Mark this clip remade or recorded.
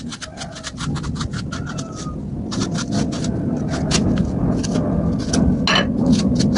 recorded